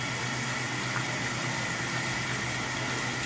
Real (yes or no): yes